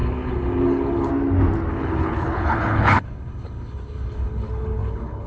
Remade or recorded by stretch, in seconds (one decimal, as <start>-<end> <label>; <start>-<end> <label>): 0.0-1.1 remade; 1.1-1.7 recorded; 1.7-5.3 remade